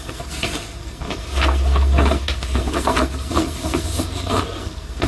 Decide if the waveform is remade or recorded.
remade